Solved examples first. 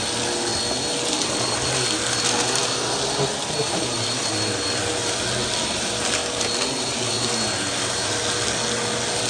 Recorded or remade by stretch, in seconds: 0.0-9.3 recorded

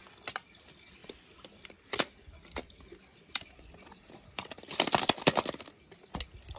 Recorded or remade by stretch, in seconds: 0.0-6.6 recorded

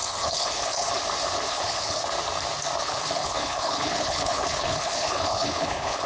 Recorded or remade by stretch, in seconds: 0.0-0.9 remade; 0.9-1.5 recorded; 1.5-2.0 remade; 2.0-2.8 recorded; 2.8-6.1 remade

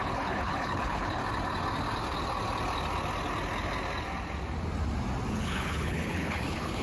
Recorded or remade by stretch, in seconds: 0.0-1.2 remade; 1.2-5.3 recorded; 5.3-6.8 remade

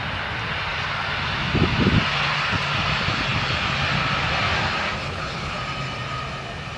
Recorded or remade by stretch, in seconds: 0.0-5.0 recorded; 5.0-5.6 remade; 5.6-6.8 recorded

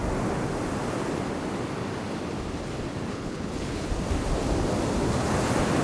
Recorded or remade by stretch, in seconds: 0.0-3.1 recorded; 3.1-3.9 remade; 3.9-5.8 recorded